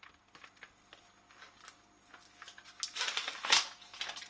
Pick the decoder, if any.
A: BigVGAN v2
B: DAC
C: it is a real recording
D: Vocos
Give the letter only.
C